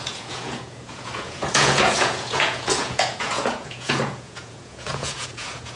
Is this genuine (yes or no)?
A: no